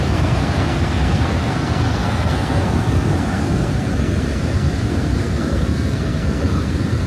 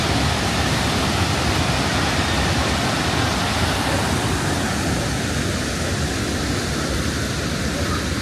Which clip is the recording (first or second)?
second